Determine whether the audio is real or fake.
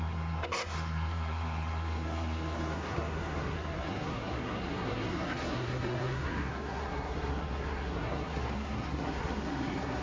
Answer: fake